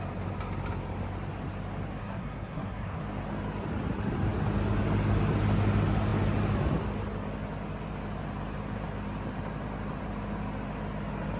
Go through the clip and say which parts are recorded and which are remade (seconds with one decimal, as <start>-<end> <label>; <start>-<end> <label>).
0.0-2.0 recorded; 2.0-3.0 remade; 3.0-11.4 recorded